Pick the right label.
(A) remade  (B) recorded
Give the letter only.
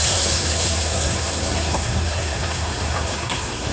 A